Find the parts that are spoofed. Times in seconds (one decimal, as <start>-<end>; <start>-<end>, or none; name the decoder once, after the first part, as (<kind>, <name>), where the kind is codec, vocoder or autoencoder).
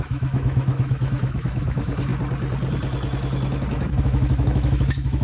0.0-2.1 (autoencoder, DAC-VAE); 4.0-5.2